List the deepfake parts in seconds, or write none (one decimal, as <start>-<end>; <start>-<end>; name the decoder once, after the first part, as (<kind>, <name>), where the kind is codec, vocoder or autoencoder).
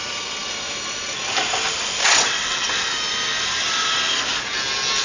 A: 2.0-2.7 (vocoder, WaveNeXt)